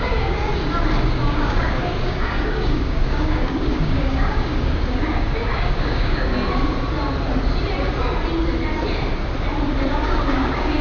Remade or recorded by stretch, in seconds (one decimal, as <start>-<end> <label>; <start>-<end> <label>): 0.0-0.5 remade; 0.5-1.1 recorded; 1.1-6.3 remade; 6.3-9.9 recorded; 9.9-10.8 remade